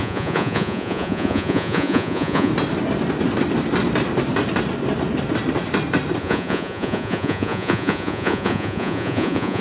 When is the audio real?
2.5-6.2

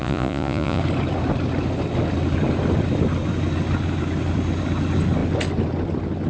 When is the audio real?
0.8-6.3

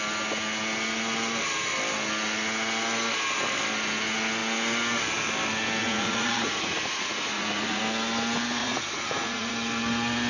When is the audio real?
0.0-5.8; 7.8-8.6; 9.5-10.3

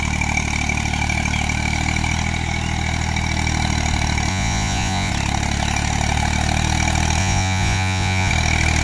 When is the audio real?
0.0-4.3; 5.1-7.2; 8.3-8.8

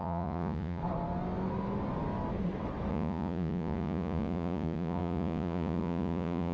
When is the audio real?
0.8-2.9

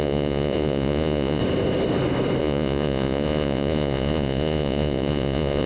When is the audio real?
1.4-2.4

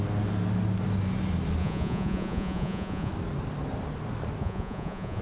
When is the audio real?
0.0-1.6; 3.1-4.4

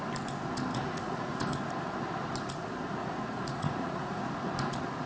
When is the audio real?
0.0-0.7; 1.4-3.0; 4.3-5.1